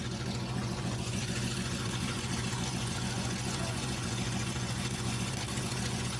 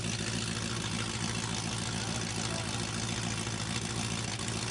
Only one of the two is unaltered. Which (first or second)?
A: second